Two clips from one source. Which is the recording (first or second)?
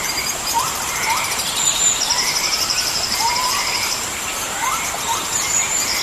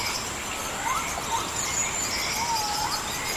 second